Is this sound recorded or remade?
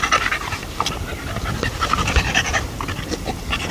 recorded